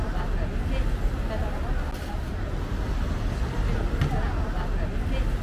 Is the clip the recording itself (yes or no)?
yes